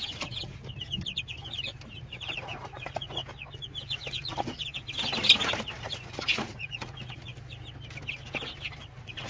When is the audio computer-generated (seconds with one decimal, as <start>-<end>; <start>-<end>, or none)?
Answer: 0.0-0.6; 1.9-3.2; 4.1-4.6; 5.8-7.3; 8.8-9.3